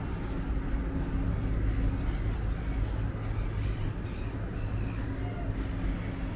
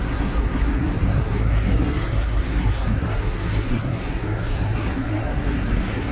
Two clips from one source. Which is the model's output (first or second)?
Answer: second